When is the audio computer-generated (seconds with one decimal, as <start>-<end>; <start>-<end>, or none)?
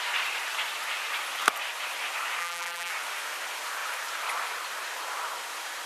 2.4-2.9